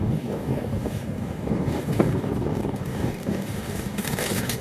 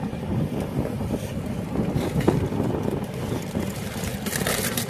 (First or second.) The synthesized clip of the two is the first